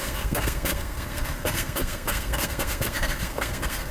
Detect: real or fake fake